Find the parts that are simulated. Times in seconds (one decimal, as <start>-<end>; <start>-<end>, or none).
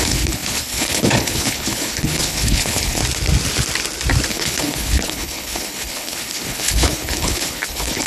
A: 0.0-3.0; 4.3-8.1